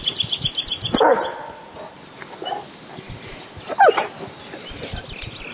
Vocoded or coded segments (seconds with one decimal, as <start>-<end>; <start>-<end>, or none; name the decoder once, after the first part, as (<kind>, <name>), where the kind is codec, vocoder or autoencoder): 0.0-5.5 (vocoder, BigVGAN v2)